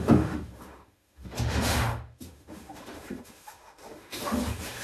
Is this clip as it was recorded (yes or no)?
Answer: no